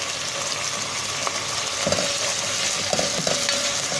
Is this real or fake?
real